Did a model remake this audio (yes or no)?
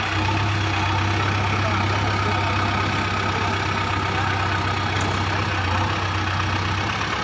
no